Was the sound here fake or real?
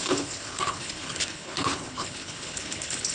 fake